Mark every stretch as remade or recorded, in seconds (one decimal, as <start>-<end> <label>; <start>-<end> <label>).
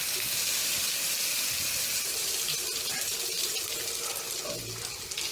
0.0-0.6 recorded; 0.6-3.8 remade; 3.8-5.3 recorded